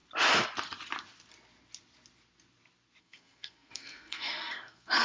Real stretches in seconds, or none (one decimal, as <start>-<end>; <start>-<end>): 0.0-3.0